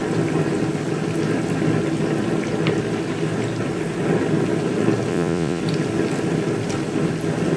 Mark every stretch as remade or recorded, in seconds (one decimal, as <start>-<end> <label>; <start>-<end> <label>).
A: 0.0-5.1 recorded; 5.1-5.6 remade; 5.6-7.6 recorded